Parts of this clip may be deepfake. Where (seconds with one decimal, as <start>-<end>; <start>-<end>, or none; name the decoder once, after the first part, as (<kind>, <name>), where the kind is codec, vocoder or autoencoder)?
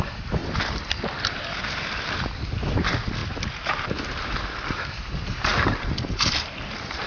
none